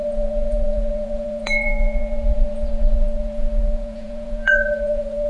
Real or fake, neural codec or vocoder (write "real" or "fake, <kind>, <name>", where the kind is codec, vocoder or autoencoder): fake, vocoder, Vocos